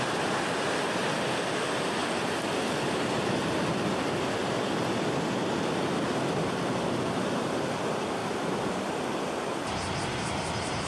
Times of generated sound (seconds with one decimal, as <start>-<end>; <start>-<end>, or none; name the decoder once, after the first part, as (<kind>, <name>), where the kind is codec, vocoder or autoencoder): none